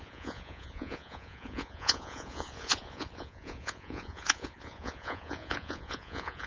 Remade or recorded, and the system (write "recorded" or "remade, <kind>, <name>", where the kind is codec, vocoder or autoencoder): remade, vocoder, Vocos